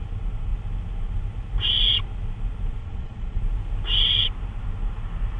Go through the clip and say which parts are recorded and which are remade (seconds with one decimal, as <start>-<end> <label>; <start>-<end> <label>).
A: 0.0-2.8 recorded; 2.8-3.4 remade; 3.4-5.4 recorded